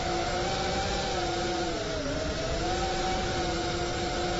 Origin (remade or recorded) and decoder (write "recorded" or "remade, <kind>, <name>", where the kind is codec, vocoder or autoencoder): recorded